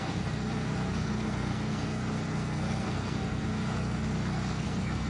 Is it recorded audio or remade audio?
remade